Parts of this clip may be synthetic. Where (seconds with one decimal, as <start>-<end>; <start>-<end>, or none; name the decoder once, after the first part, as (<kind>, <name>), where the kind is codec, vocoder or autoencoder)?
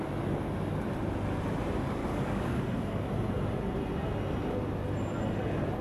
2.0-3.1 (codec, DAC)